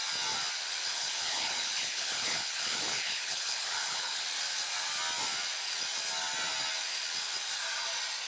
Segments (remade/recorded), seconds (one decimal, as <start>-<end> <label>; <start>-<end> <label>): 0.0-0.9 recorded; 0.9-4.2 remade; 4.2-8.3 recorded